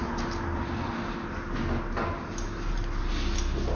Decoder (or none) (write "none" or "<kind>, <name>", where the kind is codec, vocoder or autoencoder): none